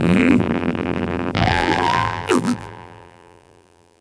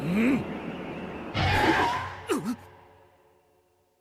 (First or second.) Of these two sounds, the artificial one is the first